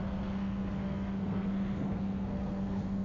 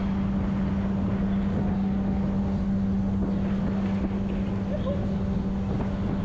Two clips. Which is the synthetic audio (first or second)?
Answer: first